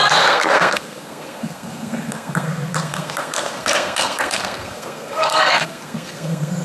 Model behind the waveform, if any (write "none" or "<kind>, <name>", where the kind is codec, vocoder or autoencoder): codec, SNAC